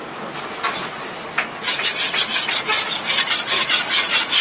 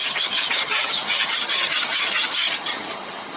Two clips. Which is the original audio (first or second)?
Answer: first